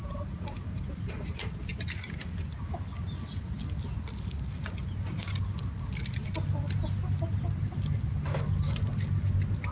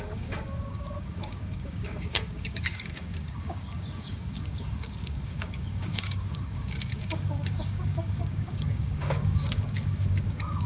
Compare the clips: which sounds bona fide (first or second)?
first